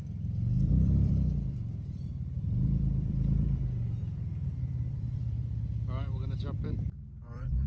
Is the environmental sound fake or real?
fake